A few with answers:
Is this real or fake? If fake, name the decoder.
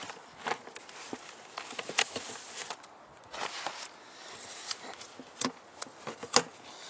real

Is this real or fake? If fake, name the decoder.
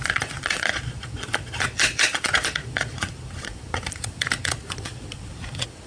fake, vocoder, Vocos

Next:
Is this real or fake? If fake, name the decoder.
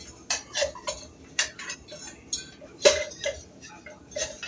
real